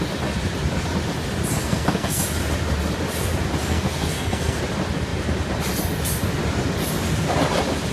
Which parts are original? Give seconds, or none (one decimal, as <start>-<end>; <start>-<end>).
0.0-1.6; 2.2-3.6; 4.6-7.9